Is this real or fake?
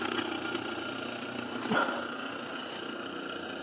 real